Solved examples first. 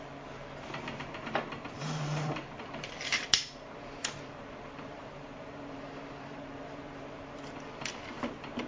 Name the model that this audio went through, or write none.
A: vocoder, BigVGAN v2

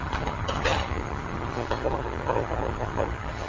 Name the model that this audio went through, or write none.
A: vocoder, HiFi-GAN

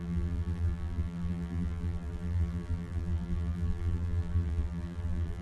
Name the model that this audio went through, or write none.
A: vocoder, BigVGAN v2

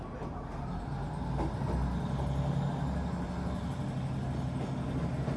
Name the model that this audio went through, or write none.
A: none